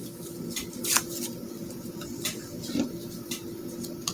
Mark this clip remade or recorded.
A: remade